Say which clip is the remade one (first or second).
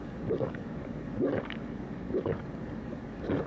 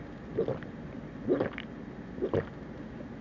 first